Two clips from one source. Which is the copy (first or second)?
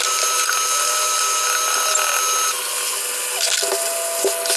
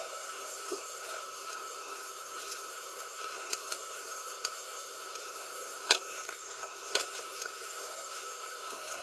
second